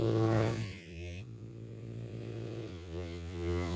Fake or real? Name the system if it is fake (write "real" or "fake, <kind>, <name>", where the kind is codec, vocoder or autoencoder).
fake, vocoder, Vocos